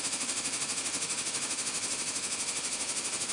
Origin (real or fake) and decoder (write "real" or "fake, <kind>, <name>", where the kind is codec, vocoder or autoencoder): fake, autoencoder, DAC-VAE